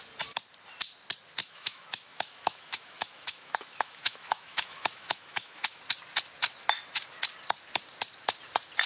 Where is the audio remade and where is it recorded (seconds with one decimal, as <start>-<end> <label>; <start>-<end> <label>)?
0.0-1.4 recorded; 1.4-5.8 remade; 5.8-8.9 recorded